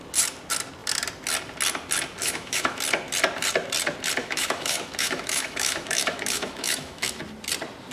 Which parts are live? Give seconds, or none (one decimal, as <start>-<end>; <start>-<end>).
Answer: 0.0-2.2; 2.8-4.2; 7.2-7.9